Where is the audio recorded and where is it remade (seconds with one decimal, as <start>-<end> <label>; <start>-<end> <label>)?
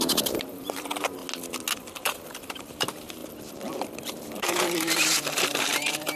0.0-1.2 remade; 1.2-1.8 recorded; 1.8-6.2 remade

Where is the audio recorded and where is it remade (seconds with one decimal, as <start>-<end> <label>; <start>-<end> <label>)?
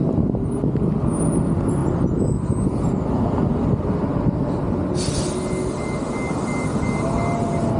0.0-7.8 recorded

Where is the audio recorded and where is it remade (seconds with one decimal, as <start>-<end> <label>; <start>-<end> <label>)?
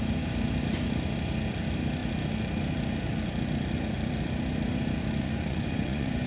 0.0-5.2 recorded; 5.2-6.3 remade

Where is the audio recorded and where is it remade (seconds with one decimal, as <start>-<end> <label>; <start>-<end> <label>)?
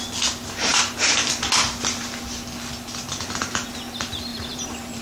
0.0-4.3 recorded; 4.3-5.0 remade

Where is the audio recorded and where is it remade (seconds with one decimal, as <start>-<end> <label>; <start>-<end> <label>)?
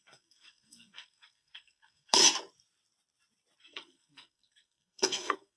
0.0-2.2 remade; 2.2-3.6 recorded; 3.6-5.6 remade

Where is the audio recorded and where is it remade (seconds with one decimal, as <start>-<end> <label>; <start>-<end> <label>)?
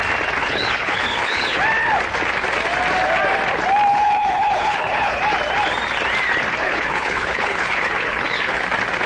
0.0-0.4 recorded; 0.4-1.6 remade; 1.6-3.9 recorded; 3.9-5.2 remade; 5.2-6.6 recorded; 6.6-8.6 remade; 8.6-9.1 recorded